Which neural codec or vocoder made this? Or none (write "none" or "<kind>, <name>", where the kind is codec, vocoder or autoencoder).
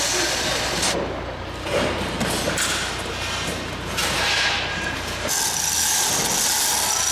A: none